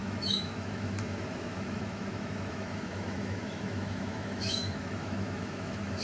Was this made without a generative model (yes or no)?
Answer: no